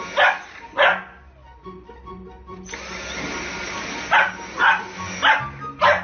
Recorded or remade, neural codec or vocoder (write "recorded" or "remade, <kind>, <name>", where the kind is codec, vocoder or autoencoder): recorded